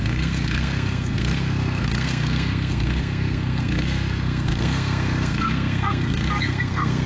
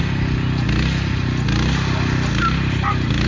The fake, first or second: first